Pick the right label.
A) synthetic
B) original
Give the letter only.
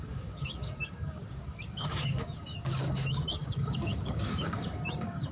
A